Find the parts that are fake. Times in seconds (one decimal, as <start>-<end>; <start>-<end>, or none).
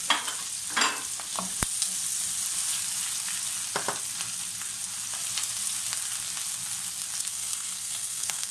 7.3-8.5